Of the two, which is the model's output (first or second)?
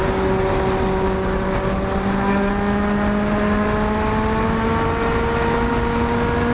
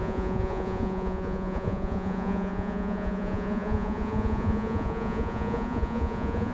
second